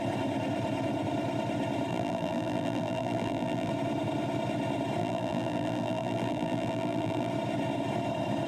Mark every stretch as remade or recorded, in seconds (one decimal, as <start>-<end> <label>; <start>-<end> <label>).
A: 0.0-1.9 recorded; 1.9-3.7 remade; 3.7-5.0 recorded; 5.0-7.3 remade; 7.3-8.5 recorded